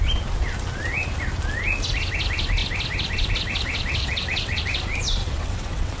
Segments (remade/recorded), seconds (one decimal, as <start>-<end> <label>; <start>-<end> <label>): 0.0-4.0 recorded; 4.0-4.6 remade; 4.6-5.2 recorded; 5.2-6.0 remade